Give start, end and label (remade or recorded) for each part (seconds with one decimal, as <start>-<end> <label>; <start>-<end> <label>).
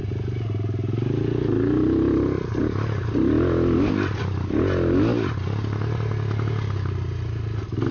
0.0-7.9 recorded